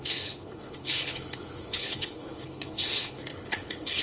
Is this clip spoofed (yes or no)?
yes